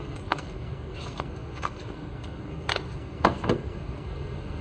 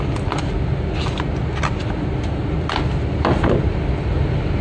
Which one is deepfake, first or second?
first